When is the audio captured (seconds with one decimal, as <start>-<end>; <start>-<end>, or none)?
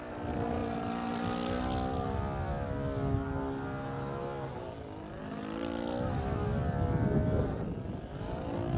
0.0-8.8